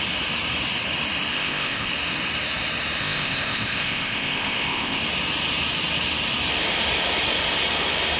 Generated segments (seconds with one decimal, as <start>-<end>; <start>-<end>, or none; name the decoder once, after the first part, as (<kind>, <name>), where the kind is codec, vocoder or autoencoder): 1.3-1.9 (codec, ZipCodec); 3.0-5.0